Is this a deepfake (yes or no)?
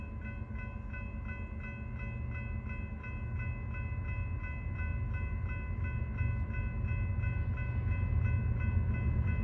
no